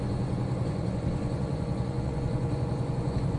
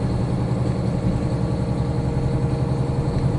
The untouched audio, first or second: second